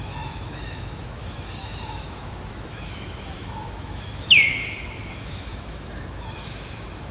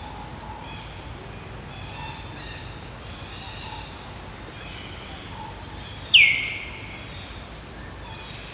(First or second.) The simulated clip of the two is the first